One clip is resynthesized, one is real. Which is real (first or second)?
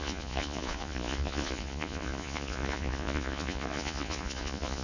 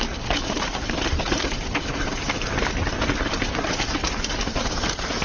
second